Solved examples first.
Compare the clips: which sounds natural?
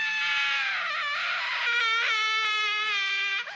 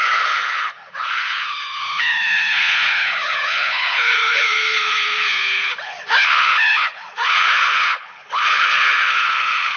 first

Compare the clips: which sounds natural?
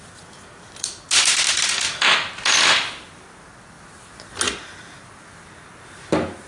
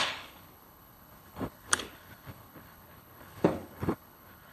first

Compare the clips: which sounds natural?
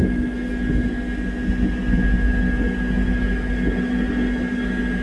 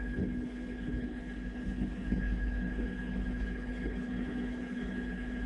first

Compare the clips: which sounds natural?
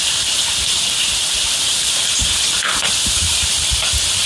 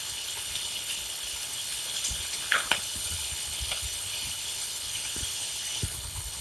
first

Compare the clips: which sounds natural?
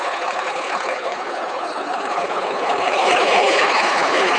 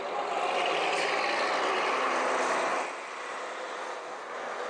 second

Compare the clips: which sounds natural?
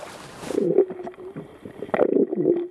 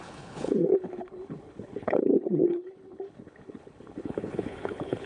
first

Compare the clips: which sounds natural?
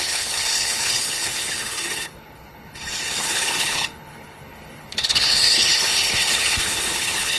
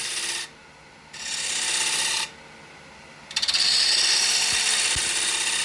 second